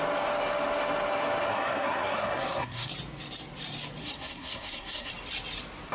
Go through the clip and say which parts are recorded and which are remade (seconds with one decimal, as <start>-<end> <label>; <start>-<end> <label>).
0.0-1.5 recorded; 1.5-2.9 remade; 2.9-4.0 recorded; 4.0-5.1 remade; 5.1-5.9 recorded